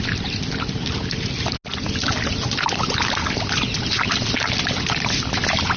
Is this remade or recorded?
recorded